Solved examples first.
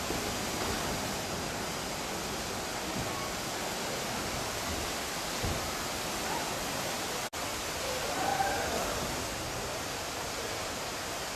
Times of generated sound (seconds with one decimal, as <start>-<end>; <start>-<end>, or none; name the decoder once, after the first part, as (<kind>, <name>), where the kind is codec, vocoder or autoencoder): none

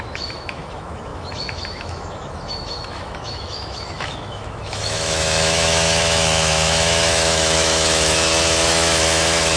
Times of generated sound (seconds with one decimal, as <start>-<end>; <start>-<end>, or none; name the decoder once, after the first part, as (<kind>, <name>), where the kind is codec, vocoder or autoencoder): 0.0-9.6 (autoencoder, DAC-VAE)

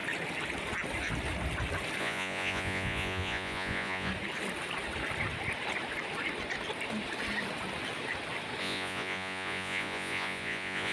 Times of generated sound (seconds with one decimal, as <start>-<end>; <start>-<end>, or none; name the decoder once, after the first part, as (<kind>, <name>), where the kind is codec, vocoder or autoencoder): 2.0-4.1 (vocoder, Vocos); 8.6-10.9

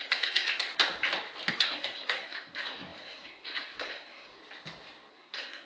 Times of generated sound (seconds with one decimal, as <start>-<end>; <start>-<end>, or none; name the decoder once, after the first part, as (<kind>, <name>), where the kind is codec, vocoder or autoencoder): 0.0-0.7 (codec, SNAC); 1.5-4.4; 5.1-5.7

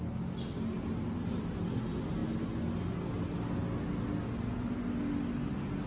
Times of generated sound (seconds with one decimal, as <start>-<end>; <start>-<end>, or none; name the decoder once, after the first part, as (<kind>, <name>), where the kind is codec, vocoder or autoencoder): none